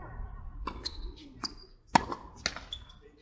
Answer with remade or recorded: recorded